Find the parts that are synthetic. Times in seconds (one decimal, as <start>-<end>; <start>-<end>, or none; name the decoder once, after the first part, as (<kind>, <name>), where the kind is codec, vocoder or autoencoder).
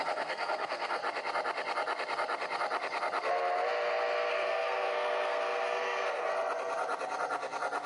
0.0-1.0 (codec, SNAC); 4.3-6.3